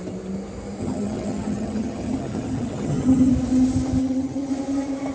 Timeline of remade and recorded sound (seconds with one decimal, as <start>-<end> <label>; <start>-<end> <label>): 0.0-0.8 recorded; 0.8-3.3 remade; 3.3-4.0 recorded; 4.0-4.5 remade; 4.5-5.1 recorded